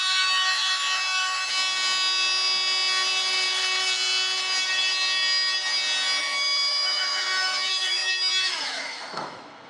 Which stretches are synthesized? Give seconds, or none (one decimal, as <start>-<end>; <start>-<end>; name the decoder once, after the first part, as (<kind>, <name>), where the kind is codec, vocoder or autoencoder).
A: 0.0-1.5 (autoencoder, DAC-VAE); 6.2-9.7